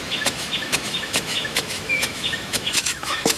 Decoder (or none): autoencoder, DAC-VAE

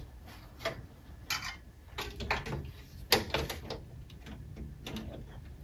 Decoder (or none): none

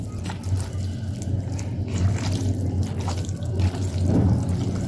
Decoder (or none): none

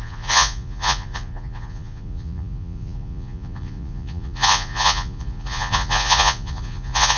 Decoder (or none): vocoder, Vocos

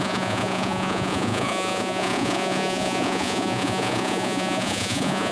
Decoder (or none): vocoder, Vocos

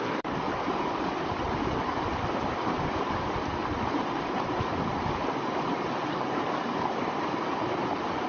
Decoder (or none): none